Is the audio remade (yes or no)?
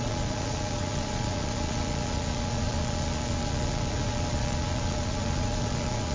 yes